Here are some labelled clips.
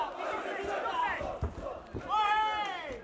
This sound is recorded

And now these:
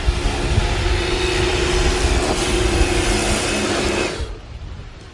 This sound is recorded